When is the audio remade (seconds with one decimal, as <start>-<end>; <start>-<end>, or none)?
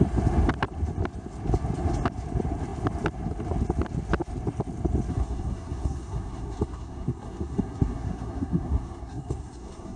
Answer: 5.1-10.0